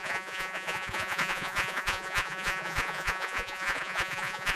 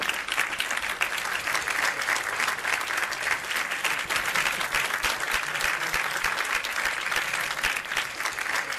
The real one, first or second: second